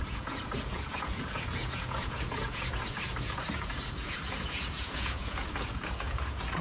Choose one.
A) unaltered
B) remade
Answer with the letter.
B